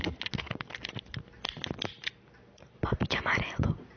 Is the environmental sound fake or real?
real